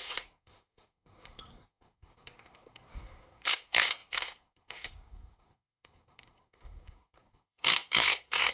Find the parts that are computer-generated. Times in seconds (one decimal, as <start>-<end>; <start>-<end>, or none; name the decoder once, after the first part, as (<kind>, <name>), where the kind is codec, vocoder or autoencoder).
0.0-8.5 (codec, SNAC)